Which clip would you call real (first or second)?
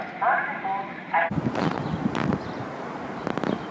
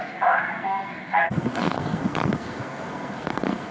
first